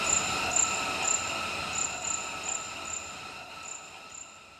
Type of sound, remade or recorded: recorded